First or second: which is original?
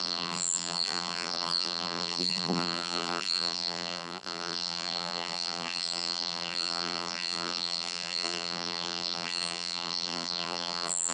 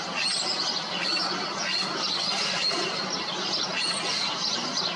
second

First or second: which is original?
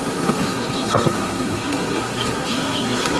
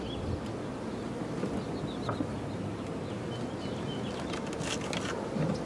second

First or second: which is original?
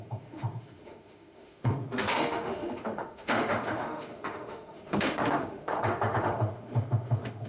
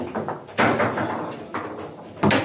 second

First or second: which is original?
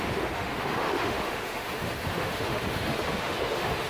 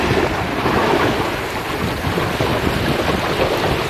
second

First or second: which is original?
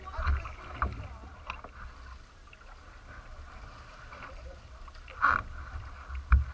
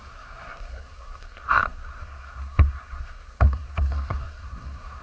first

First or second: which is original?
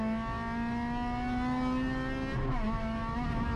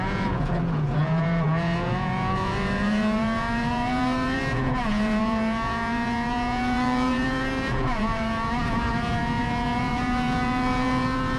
first